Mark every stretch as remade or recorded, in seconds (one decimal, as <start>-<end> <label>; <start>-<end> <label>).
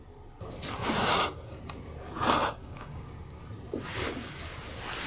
0.0-1.0 recorded; 1.0-1.6 remade; 1.6-2.6 recorded; 2.6-3.4 remade; 3.4-3.9 recorded; 3.9-4.4 remade; 4.4-5.1 recorded